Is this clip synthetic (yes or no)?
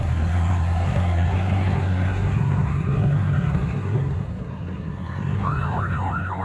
yes